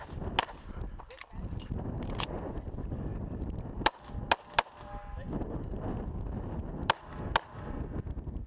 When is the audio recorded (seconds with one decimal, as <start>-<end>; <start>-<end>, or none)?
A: 0.0-8.5